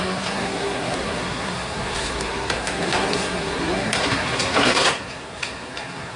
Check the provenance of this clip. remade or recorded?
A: remade